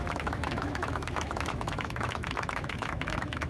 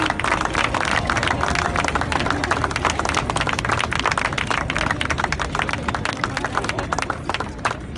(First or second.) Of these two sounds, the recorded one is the second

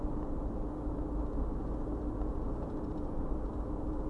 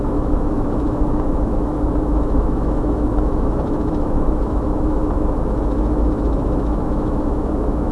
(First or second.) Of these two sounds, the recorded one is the first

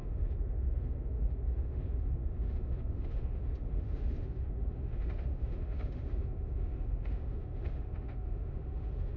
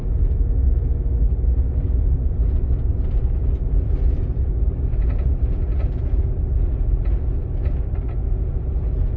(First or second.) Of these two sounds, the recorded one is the second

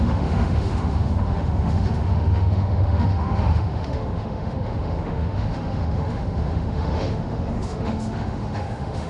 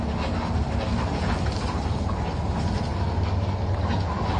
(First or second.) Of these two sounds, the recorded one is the second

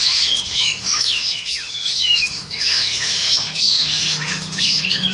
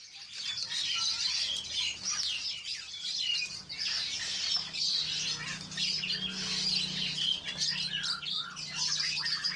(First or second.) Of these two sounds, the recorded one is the second